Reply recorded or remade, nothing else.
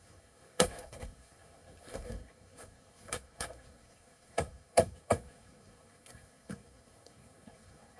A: remade